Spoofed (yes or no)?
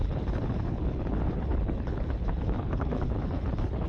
yes